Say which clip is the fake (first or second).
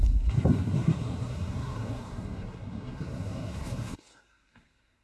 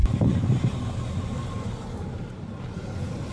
first